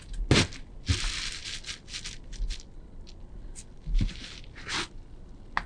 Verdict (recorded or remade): recorded